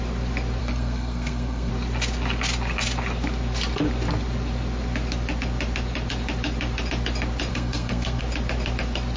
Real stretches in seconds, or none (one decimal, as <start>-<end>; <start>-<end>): 0.0-0.6; 1.7-7.5; 8.2-9.2